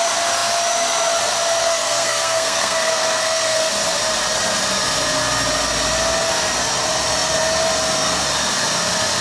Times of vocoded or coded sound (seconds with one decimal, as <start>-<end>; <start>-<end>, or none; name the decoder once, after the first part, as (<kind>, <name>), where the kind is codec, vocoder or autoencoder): 1.6-3.7 (codec, SNAC)